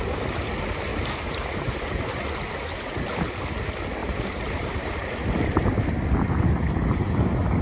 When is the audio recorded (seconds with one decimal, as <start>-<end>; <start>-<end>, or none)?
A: 0.0-0.9; 2.2-4.0; 5.6-7.6